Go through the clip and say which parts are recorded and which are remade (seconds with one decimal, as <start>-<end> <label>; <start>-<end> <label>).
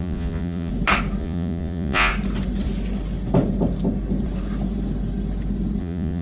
0.0-0.7 remade; 0.7-1.2 recorded; 1.2-2.1 remade; 2.1-5.8 recorded; 5.8-6.2 remade